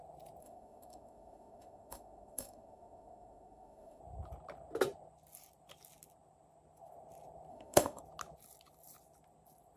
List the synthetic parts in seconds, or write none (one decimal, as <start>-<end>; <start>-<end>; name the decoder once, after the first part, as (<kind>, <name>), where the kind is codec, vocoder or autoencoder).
0.4-4.0 (autoencoder, DAC-VAE); 7.5-8.0